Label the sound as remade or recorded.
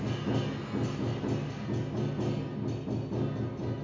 recorded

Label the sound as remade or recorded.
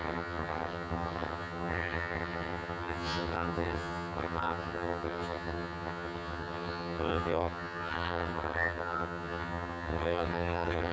remade